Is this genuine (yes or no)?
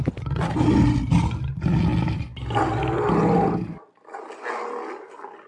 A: yes